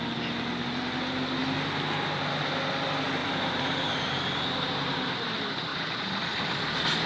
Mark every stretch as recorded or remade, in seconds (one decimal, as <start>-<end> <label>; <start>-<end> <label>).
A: 0.0-3.2 recorded; 3.2-5.2 remade; 5.2-7.1 recorded